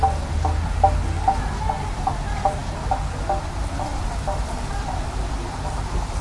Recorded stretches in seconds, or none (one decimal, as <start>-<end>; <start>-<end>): 0.0-3.9; 4.5-6.2

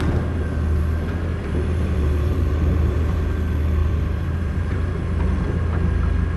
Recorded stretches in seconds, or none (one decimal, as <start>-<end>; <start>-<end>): 0.0-1.3; 3.2-3.8; 4.9-6.4